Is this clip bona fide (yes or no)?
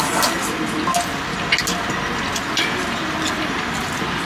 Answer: yes